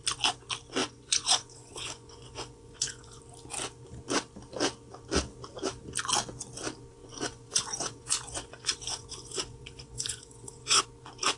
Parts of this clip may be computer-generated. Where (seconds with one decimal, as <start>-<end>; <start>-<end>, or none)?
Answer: 0.8-3.2; 7.0-10.8